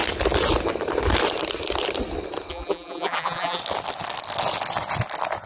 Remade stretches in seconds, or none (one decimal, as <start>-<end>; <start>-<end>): 2.5-3.6